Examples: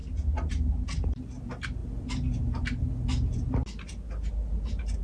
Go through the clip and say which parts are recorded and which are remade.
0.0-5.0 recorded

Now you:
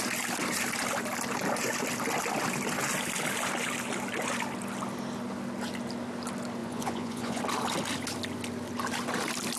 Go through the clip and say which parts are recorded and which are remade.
0.0-6.6 recorded; 6.6-7.4 remade; 7.4-9.6 recorded

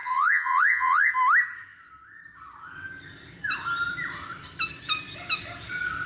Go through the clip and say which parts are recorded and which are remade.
0.0-1.1 remade; 1.1-6.1 recorded